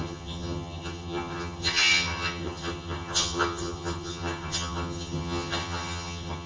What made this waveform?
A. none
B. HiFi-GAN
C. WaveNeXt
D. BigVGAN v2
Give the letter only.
B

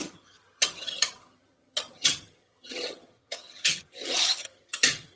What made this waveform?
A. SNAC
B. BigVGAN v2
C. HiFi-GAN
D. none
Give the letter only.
C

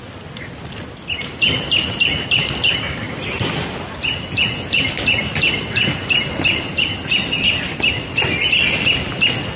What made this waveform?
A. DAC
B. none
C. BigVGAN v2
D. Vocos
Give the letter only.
B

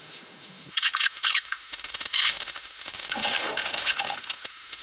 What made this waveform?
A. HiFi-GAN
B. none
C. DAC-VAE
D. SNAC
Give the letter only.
C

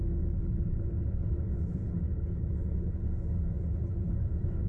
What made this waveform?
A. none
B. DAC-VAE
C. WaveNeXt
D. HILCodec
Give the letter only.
D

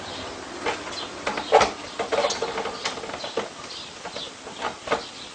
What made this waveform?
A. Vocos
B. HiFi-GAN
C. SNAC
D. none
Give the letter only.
D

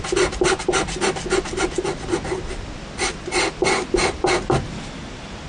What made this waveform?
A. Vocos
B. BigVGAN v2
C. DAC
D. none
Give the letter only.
D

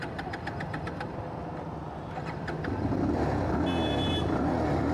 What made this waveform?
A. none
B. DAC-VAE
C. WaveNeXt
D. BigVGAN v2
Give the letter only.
A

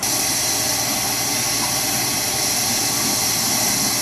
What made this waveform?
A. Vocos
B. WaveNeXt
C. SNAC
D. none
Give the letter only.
D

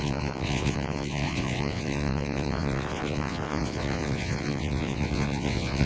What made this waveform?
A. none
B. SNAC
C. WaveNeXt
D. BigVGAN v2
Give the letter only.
C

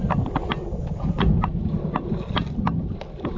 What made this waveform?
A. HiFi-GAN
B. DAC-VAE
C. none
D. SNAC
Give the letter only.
C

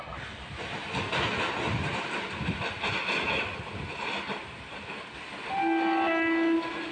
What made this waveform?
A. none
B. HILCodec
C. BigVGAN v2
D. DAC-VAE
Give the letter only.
A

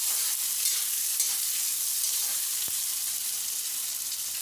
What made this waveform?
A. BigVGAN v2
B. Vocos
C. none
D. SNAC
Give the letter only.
C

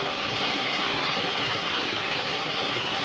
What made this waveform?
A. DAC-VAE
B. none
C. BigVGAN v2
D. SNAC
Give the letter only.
D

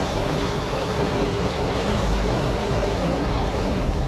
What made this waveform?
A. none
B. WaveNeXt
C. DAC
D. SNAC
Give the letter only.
D